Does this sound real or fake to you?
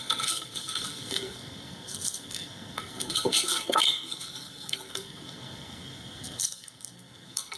fake